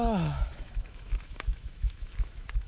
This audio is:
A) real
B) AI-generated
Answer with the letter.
B